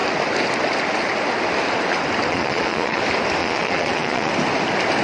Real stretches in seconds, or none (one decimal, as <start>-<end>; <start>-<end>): 0.0-2.3; 3.0-3.4; 4.3-5.0